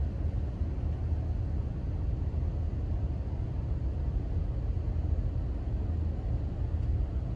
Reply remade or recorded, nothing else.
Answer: recorded